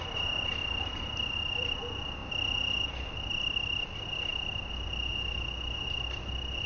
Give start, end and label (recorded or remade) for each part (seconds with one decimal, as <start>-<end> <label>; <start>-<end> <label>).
0.0-0.6 recorded; 0.6-1.8 remade; 1.8-6.7 recorded